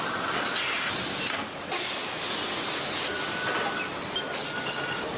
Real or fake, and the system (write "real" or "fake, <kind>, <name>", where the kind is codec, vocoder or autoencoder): real